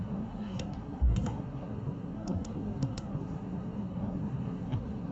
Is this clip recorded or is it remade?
remade